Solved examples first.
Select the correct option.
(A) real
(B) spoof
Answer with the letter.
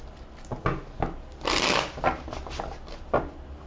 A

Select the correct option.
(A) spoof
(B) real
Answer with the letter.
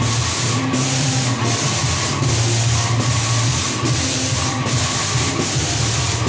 B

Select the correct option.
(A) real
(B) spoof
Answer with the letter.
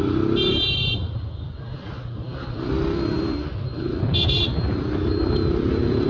A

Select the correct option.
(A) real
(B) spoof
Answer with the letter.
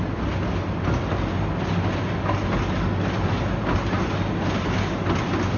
A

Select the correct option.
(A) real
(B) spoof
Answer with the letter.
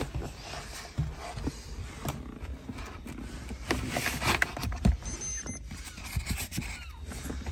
A